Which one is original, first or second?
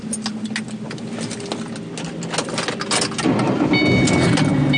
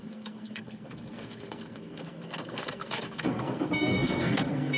first